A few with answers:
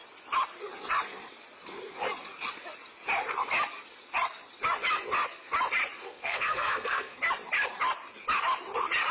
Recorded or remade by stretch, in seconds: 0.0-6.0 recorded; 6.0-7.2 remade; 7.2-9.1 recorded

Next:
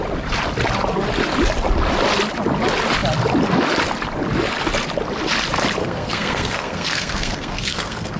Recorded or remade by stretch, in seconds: 0.0-5.8 recorded; 5.8-8.2 remade

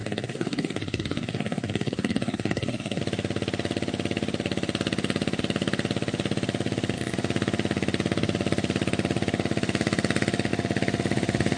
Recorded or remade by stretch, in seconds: 0.0-3.0 remade; 3.0-11.6 recorded

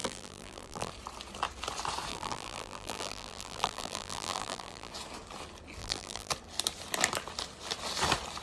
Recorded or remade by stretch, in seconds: 0.0-0.9 remade; 0.9-2.1 recorded; 2.1-4.9 remade; 4.9-5.8 recorded; 5.8-6.3 remade; 6.3-8.4 recorded

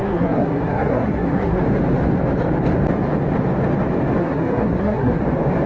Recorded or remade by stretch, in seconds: 0.0-1.6 remade; 1.6-4.2 recorded; 4.2-5.2 remade; 5.2-5.7 recorded

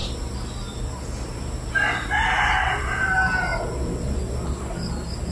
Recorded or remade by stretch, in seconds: 0.0-5.3 recorded